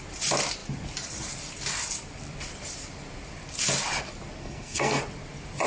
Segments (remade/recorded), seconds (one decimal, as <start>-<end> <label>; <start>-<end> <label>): 0.0-4.4 recorded; 4.4-5.0 remade; 5.0-5.7 recorded